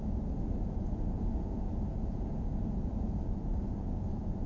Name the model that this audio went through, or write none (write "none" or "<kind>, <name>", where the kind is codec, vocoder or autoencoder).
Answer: vocoder, Vocos